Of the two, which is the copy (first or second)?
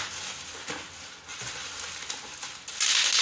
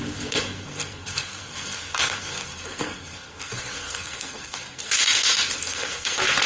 second